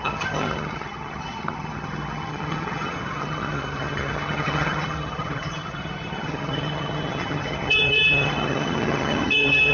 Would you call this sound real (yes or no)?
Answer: no